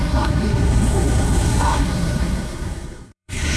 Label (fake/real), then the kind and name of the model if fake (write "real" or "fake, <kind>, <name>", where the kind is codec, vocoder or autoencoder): fake, codec, SNAC